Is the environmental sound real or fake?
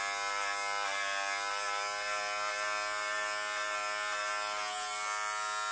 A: real